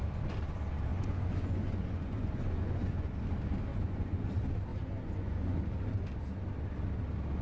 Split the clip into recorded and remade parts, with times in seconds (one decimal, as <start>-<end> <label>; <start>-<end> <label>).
0.0-0.9 recorded; 0.9-3.1 remade; 3.1-3.7 recorded; 3.7-4.3 remade; 4.3-4.7 recorded; 4.7-5.6 remade; 5.6-7.4 recorded